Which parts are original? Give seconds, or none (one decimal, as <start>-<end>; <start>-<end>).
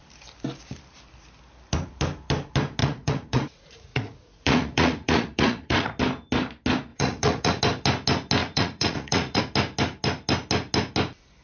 0.0-2.8; 6.0-6.9; 7.6-8.4; 9.4-11.4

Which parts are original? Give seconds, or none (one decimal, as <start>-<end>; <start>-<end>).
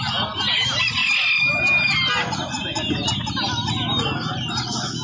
0.0-5.0